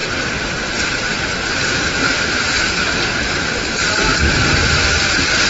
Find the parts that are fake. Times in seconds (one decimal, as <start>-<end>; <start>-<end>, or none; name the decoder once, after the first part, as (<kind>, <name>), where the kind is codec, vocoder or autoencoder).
none